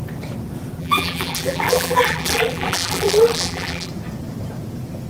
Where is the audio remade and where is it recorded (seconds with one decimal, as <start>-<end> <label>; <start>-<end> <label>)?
0.0-0.8 recorded; 0.8-3.9 remade; 3.9-5.1 recorded